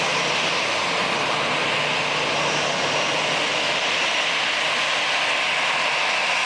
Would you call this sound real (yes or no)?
yes